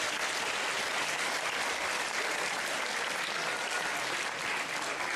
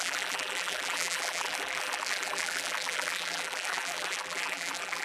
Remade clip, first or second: second